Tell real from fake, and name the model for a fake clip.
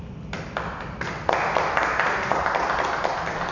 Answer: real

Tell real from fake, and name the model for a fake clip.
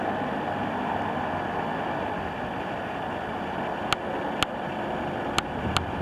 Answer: real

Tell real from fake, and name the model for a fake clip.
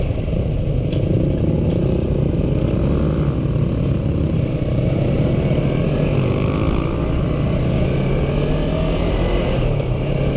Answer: real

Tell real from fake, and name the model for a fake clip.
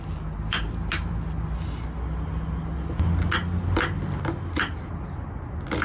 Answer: real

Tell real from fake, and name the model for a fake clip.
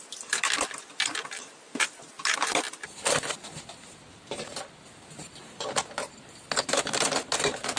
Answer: real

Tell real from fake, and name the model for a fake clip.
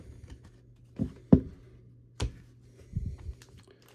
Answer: real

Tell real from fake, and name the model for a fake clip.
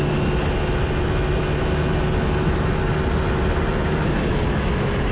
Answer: real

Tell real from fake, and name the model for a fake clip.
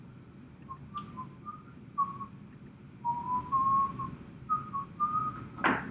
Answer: real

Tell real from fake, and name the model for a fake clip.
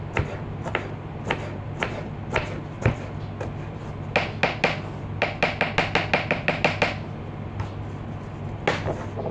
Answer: real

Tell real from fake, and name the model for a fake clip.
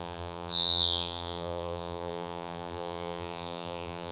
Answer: fake, vocoder, BigVGAN v2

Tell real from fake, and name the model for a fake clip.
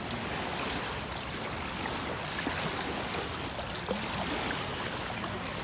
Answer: real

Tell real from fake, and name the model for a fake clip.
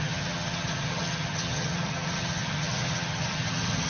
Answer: fake, vocoder, HiFi-GAN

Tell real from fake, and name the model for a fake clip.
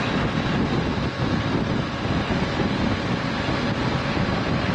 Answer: real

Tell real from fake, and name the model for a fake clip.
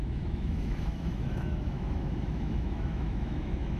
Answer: fake, autoencoder, DAC-VAE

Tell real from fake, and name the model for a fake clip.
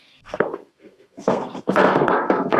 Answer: fake, codec, SNAC